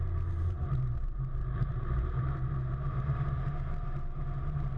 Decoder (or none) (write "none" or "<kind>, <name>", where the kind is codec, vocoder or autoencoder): vocoder, BigVGAN v2